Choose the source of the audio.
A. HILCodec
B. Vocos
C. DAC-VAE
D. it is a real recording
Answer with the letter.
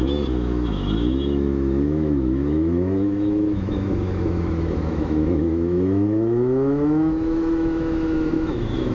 C